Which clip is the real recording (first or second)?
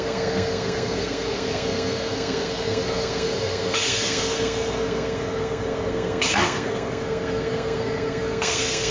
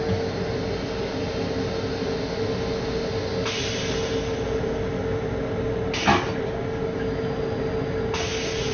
second